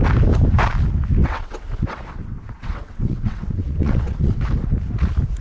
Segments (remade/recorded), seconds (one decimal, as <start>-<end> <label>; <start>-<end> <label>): 0.0-1.2 recorded; 1.2-4.4 remade; 4.4-5.4 recorded